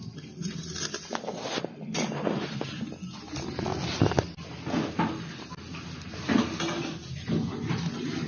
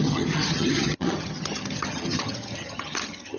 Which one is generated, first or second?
second